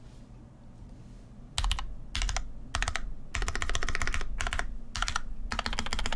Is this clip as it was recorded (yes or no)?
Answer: yes